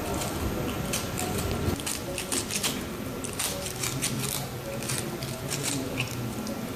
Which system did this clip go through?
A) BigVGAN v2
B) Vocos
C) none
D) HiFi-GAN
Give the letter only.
C